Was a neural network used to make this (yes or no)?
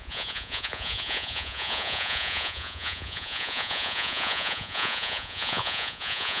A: yes